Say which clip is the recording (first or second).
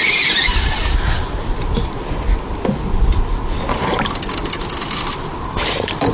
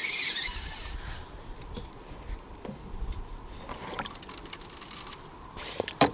first